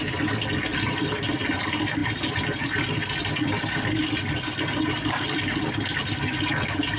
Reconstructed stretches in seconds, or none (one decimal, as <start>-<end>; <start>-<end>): 0.7-1.5; 2.0-6.2